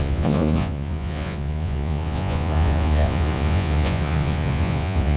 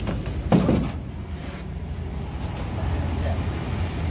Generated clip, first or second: first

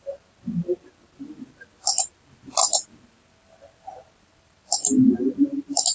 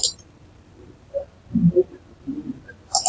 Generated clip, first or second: second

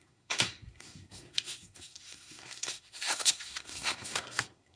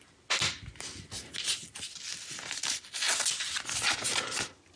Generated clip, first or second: first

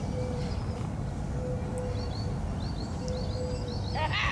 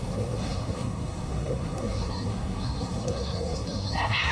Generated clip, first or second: second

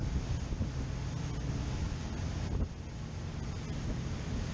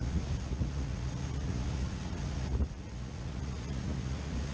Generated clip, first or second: second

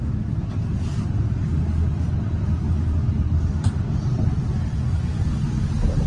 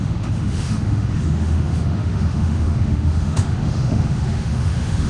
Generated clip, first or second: second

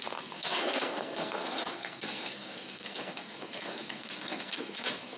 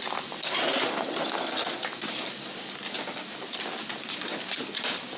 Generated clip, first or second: first